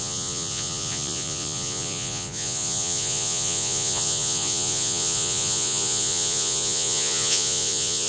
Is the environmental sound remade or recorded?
remade